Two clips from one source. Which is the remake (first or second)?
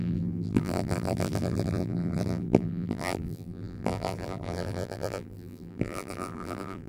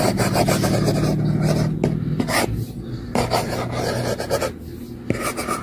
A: first